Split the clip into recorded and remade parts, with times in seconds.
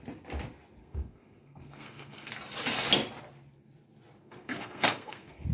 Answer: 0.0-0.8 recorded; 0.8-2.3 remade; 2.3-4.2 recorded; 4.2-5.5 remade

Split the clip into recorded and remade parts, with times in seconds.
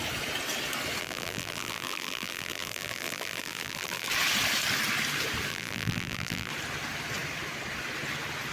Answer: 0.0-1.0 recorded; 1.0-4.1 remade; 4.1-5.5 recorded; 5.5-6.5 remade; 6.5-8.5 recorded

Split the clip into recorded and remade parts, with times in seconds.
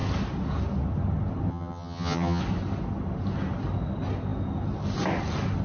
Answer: 0.0-1.5 recorded; 1.5-2.4 remade; 2.4-5.6 recorded